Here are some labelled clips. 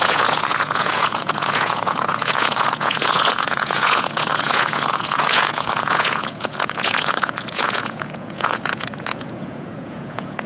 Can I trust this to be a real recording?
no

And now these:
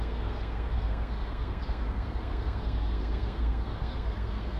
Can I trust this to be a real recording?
no